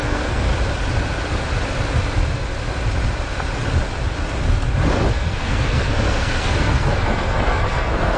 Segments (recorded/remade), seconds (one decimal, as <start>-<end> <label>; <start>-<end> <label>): 0.0-0.5 remade; 0.5-5.1 recorded; 5.1-8.2 remade